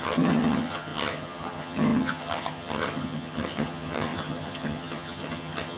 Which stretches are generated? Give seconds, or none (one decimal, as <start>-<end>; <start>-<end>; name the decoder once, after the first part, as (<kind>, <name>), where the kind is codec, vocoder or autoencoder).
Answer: 0.0-5.8 (vocoder, HiFi-GAN)